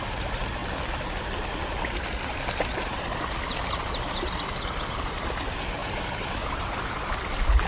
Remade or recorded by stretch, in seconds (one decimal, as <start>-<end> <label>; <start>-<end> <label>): 0.0-5.8 recorded; 5.8-7.1 remade; 7.1-7.7 recorded